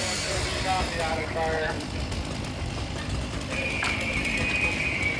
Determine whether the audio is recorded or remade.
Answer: recorded